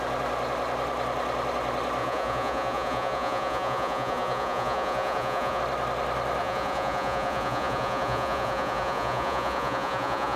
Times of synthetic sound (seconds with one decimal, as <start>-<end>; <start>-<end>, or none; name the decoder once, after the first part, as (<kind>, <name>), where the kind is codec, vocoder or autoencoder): 2.0-5.6 (vocoder, Vocos); 6.4-10.4